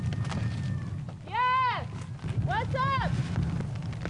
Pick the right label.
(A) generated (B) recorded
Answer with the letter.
B